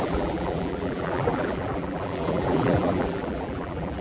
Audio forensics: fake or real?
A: fake